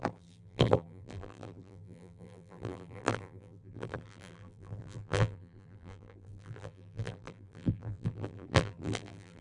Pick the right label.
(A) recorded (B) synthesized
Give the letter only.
B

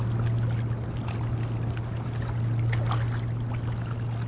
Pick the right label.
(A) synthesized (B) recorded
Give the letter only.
B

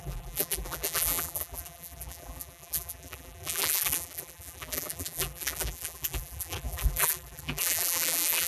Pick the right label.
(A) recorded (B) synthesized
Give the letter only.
B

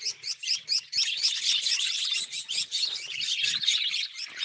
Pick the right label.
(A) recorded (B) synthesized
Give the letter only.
A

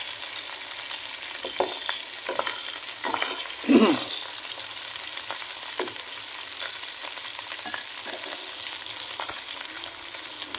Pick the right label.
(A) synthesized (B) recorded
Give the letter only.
B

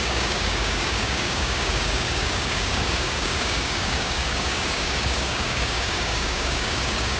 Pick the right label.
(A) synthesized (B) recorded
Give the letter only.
A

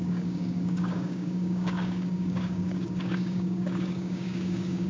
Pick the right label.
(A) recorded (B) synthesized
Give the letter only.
B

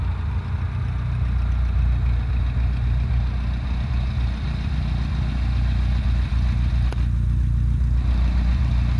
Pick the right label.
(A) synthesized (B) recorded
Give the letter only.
B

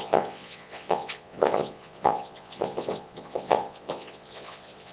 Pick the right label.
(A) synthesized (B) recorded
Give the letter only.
A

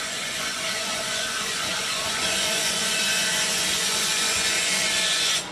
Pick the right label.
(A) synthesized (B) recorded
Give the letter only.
A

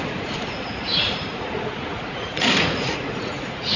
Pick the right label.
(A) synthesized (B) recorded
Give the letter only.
A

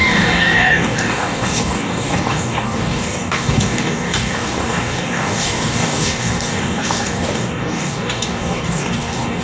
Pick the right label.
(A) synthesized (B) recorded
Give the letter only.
A